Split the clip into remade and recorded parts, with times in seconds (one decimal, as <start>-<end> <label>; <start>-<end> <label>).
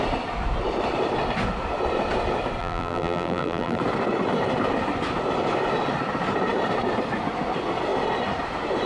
0.0-2.6 recorded; 2.6-3.8 remade; 3.8-8.9 recorded